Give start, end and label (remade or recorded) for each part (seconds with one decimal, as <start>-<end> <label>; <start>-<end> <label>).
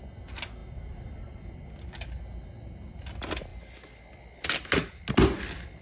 0.0-0.6 recorded; 0.6-2.2 remade; 2.2-5.8 recorded